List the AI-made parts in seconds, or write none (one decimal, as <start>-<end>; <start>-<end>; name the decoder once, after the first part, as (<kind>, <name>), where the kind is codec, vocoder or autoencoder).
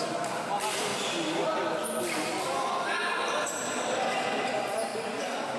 4.9-5.6 (vocoder, BigVGAN v2)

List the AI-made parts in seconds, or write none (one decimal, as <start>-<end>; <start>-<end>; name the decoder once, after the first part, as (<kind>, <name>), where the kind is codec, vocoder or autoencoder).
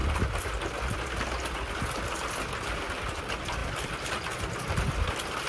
3.6-5.1 (vocoder, BigVGAN v2)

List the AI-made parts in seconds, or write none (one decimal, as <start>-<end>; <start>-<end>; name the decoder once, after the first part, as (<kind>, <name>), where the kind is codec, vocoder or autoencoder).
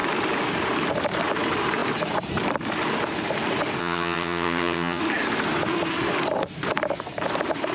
3.8-5.0 (vocoder, HiFi-GAN)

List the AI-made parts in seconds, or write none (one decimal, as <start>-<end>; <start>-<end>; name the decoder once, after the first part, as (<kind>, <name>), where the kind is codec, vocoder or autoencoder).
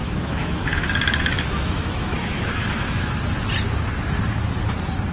0.0-3.1 (autoencoder, DAC-VAE)